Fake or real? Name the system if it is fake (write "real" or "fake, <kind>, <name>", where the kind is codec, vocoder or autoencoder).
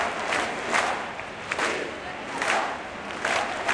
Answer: fake, vocoder, BigVGAN v2